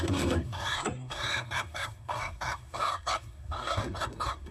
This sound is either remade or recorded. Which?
remade